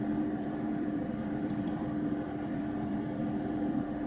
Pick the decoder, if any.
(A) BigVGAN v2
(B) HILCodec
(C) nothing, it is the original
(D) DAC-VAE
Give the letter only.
A